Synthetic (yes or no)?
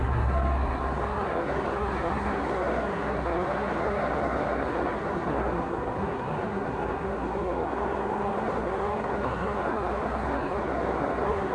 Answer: yes